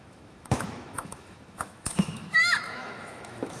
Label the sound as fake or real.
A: fake